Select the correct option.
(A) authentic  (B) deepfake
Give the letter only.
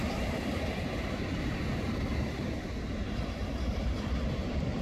B